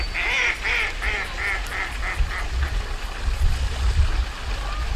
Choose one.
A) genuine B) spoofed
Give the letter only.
A